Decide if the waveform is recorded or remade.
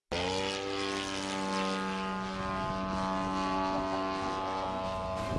recorded